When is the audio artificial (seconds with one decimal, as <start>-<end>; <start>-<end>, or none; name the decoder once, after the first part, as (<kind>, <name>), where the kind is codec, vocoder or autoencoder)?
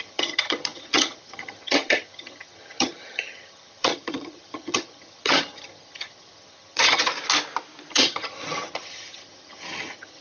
0.0-7.1 (vocoder, HiFi-GAN); 7.9-10.2